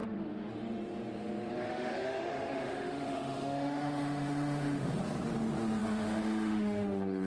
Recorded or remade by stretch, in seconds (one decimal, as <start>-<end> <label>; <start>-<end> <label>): 0.0-0.5 remade; 0.5-1.7 recorded; 1.7-4.9 remade; 4.9-5.8 recorded; 5.8-7.3 remade